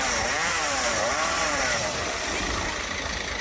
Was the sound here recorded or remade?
remade